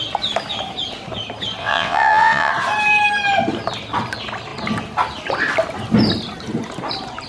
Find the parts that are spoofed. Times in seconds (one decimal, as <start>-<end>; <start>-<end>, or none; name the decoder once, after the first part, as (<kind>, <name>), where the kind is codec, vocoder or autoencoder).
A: 1.6-2.5 (vocoder, WaveNeXt)